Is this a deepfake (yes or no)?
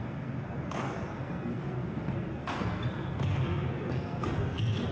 yes